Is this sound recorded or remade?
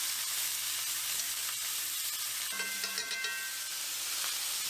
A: recorded